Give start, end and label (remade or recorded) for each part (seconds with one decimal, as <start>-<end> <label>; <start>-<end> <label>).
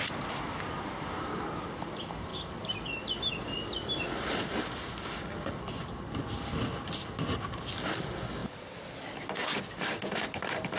0.0-10.8 recorded